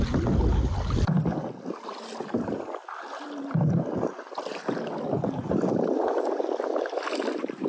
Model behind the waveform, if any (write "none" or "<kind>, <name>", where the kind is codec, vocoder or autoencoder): none